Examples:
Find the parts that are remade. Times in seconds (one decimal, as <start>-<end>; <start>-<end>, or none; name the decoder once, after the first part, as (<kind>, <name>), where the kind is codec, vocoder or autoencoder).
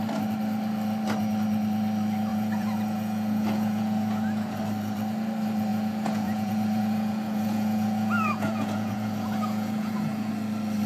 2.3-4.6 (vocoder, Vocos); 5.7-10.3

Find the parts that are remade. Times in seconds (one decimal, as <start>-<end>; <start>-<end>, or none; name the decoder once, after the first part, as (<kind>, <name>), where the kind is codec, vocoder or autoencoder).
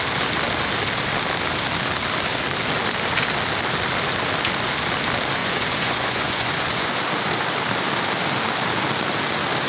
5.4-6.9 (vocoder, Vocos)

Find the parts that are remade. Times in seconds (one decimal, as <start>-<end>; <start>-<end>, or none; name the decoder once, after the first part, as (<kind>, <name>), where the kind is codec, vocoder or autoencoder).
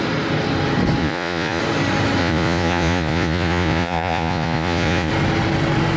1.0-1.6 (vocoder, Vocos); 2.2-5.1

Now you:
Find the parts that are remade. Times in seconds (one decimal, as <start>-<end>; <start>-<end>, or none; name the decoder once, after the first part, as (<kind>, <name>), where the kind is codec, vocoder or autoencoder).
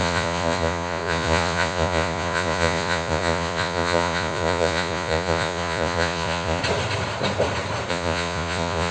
0.0-6.6 (vocoder, Vocos); 7.9-8.9